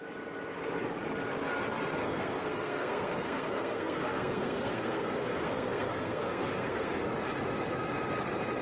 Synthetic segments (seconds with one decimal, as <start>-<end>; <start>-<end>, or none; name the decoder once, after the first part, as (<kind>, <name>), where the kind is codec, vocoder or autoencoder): 2.0-6.9 (codec, SNAC)